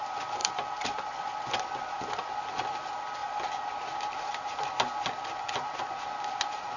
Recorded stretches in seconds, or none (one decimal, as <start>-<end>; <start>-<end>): 0.0-0.4; 1.5-3.2; 4.3-6.8